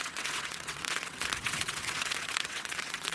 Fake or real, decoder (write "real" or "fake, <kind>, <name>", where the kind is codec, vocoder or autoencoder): fake, vocoder, WaveNeXt